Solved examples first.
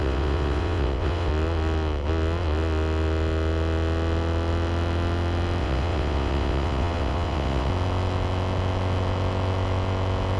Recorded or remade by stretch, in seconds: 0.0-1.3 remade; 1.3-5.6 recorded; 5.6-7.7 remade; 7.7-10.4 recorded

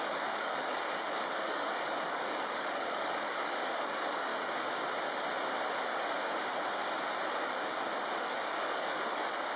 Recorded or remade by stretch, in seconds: 0.0-4.3 remade; 4.3-8.2 recorded; 8.2-9.6 remade

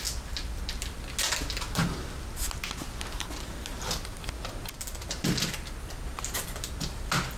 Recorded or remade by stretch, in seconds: 0.0-7.4 recorded

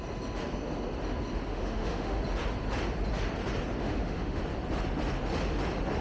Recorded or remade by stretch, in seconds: 0.0-1.5 recorded; 1.5-2.2 remade; 2.2-3.8 recorded; 3.8-4.4 remade; 4.4-6.0 recorded

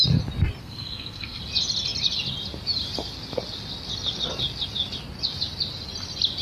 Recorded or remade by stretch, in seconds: 0.0-0.6 recorded; 0.6-1.4 remade; 1.4-6.4 recorded

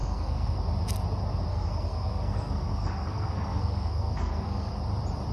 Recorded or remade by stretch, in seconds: 0.0-0.6 remade; 0.6-1.5 recorded; 1.5-4.7 remade; 4.7-5.3 recorded

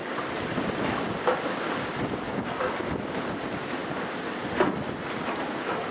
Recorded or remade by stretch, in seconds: 0.0-5.9 recorded